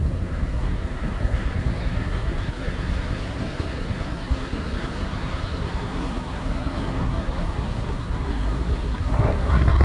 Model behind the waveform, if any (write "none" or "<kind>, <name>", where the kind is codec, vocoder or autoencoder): codec, SNAC